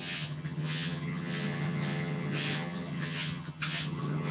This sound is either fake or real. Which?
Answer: fake